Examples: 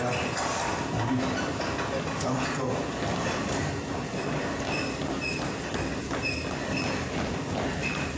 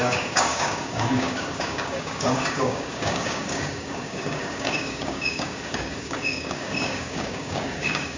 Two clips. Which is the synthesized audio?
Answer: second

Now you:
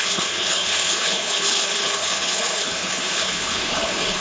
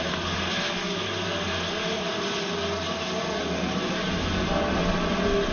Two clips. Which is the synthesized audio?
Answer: first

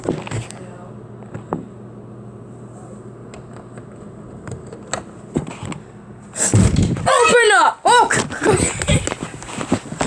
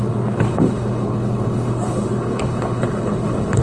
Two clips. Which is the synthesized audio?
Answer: second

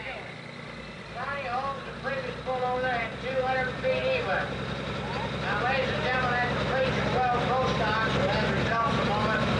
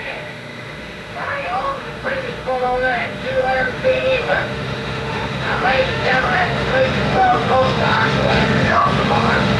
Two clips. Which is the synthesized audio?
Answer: second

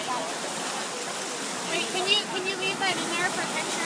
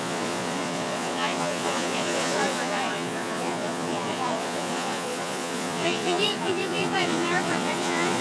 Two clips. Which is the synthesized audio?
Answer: second